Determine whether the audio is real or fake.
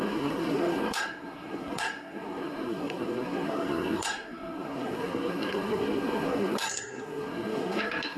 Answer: fake